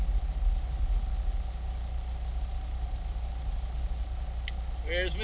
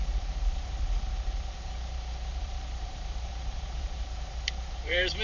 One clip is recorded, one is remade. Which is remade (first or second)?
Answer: second